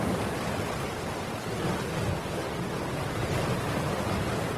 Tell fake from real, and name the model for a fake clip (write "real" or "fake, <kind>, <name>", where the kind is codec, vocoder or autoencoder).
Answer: real